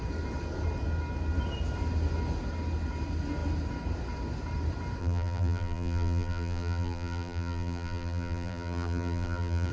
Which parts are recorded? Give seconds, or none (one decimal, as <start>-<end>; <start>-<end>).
0.0-5.0